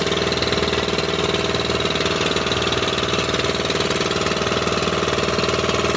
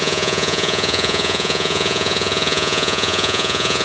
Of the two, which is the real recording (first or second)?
first